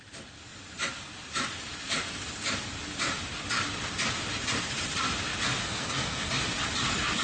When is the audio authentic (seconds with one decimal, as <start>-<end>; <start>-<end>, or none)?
0.0-5.6; 6.3-7.2